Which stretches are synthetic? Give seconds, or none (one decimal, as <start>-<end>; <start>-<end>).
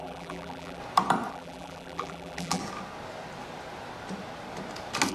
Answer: 0.0-0.8; 1.3-2.6